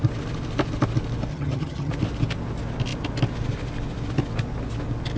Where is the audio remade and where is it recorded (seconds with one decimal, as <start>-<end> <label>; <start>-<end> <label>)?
0.0-1.3 recorded; 1.3-1.9 remade; 1.9-5.2 recorded